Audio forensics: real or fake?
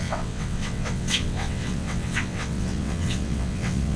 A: fake